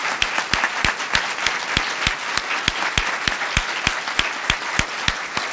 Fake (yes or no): no